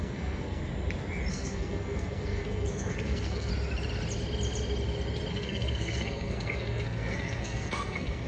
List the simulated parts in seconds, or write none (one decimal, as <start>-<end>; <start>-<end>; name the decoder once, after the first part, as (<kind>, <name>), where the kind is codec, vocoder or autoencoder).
0.0-0.6 (codec, SNAC); 1.3-3.5; 5.3-8.3